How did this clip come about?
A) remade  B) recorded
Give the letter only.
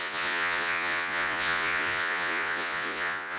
A